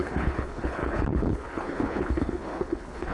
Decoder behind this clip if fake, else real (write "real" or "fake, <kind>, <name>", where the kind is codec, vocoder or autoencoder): fake, codec, HILCodec